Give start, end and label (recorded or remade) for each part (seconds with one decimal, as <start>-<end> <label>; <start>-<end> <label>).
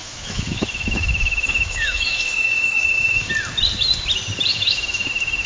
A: 0.0-3.3 remade; 3.3-4.5 recorded; 4.5-5.1 remade; 5.1-5.5 recorded